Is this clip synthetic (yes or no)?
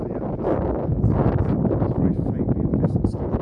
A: no